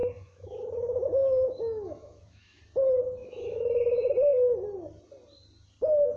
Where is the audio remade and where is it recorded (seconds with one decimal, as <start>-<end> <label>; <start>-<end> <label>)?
0.0-2.6 remade; 2.6-3.2 recorded; 3.2-4.1 remade; 4.1-6.2 recorded